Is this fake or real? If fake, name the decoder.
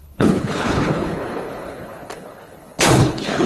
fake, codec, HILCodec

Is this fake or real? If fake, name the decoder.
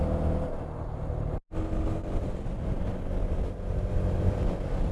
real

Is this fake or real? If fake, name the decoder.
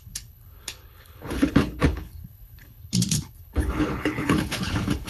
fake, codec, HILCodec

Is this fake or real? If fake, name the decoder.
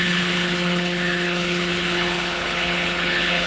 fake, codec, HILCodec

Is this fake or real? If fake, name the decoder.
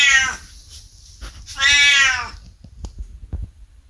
real